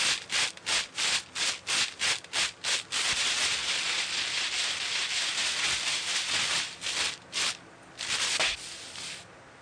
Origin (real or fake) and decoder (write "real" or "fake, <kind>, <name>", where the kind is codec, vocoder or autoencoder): real